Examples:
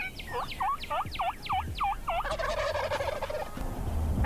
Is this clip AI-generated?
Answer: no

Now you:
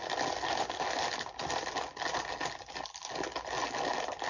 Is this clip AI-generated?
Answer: no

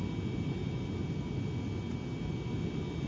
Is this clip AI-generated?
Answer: no